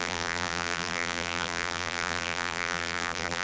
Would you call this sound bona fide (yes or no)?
no